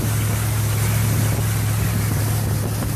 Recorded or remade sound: recorded